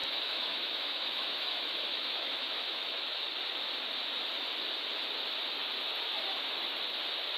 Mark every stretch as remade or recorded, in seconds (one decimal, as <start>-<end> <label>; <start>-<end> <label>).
0.0-3.2 remade; 3.2-7.4 recorded